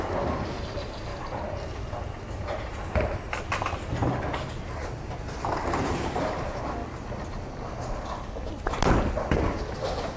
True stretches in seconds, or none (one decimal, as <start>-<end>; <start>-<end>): 0.0-10.2